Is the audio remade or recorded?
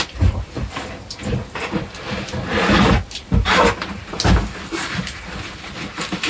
recorded